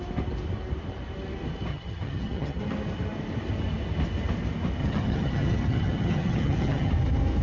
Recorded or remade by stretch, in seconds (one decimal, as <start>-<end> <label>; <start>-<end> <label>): 0.0-1.7 recorded; 1.7-2.6 remade; 2.6-4.8 recorded; 4.8-6.9 remade; 6.9-7.4 recorded